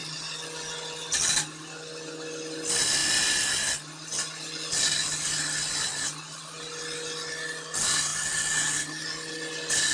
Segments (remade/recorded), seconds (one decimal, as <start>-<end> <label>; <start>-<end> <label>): 0.0-9.9 recorded